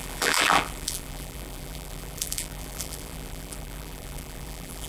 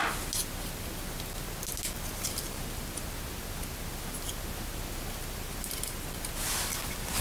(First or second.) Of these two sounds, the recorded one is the second